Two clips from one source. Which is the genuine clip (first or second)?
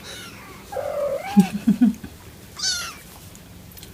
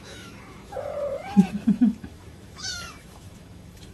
first